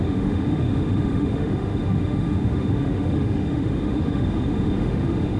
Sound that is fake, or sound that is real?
fake